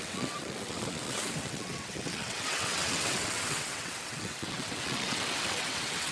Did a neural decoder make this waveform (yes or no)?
yes